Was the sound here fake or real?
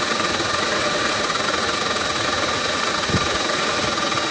fake